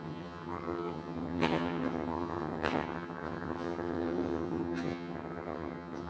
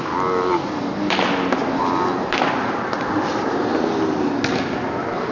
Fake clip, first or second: first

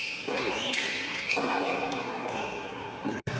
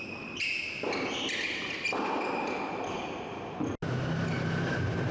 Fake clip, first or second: first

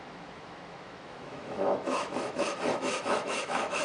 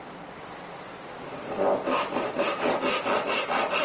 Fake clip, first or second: first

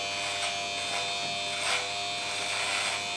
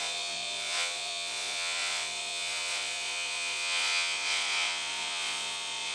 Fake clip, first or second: second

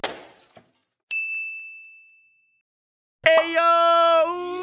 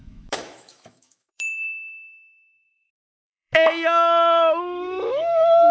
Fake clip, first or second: second